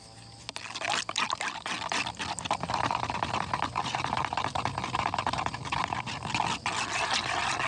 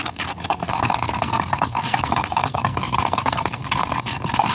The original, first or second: first